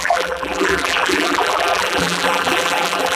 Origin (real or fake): fake